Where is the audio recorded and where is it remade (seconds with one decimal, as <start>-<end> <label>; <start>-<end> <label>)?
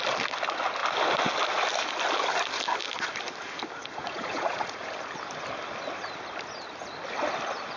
0.0-3.8 recorded; 3.8-4.9 remade; 4.9-7.8 recorded